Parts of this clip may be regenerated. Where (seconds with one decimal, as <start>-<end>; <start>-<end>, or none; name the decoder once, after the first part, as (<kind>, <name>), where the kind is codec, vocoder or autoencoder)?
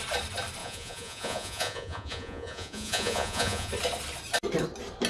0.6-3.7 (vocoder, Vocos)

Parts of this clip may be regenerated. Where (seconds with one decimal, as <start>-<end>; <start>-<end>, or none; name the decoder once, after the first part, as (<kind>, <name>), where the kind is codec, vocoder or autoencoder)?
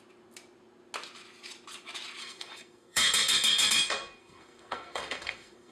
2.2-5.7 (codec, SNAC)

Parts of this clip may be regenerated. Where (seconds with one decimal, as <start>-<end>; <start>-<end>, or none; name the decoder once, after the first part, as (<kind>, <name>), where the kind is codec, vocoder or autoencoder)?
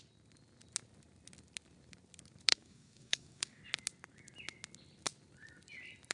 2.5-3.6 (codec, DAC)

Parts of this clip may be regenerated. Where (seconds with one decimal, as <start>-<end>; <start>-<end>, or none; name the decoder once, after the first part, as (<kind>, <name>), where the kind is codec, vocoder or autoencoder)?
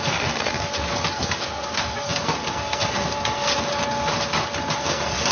0.0-0.5 (codec, SNAC); 1.1-3.5; 4.8-5.3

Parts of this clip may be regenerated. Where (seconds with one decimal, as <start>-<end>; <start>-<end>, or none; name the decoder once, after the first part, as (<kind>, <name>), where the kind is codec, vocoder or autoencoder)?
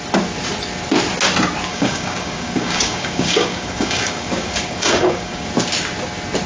1.7-5.5 (codec, DAC)